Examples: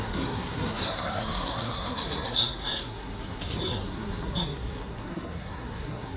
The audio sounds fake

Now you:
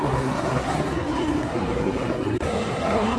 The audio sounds fake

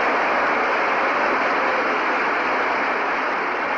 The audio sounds real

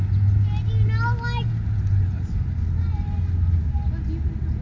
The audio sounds real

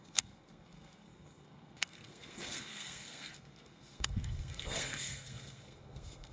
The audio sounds fake